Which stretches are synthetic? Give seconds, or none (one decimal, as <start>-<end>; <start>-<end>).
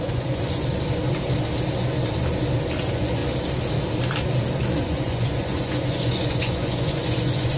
0.0-0.6; 2.8-3.2; 4.8-7.6